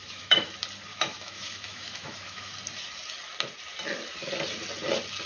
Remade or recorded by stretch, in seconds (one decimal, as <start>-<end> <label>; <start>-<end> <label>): 0.0-0.5 remade; 0.5-0.9 recorded; 0.9-2.5 remade; 2.5-5.3 recorded